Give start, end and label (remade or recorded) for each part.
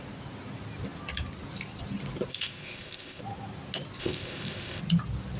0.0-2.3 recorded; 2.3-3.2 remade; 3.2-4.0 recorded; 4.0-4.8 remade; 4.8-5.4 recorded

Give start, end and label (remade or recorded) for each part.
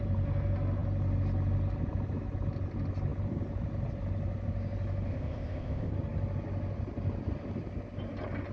0.0-5.1 recorded; 5.1-5.9 remade; 5.9-8.5 recorded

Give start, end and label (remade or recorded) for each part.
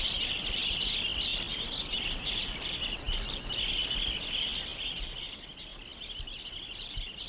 0.0-7.3 recorded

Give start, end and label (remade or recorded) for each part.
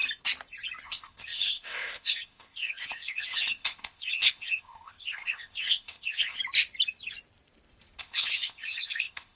0.0-0.8 recorded; 0.8-6.4 remade; 6.4-8.0 recorded; 8.0-9.4 remade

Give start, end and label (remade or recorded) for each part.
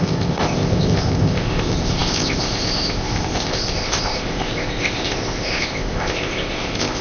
0.0-7.0 remade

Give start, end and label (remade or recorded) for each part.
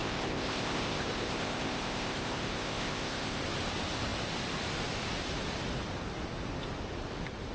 0.0-3.4 remade; 3.4-7.5 recorded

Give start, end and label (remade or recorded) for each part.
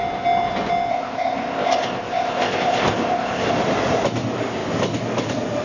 0.0-0.9 recorded; 0.9-3.4 remade; 3.4-5.6 recorded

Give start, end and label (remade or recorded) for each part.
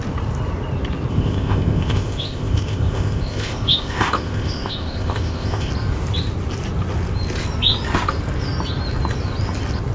0.0-1.1 recorded; 1.1-5.7 remade; 5.7-9.9 recorded